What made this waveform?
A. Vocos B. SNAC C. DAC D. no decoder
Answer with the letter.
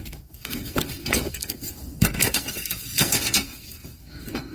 B